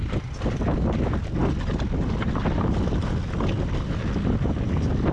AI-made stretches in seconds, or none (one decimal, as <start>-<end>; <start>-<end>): none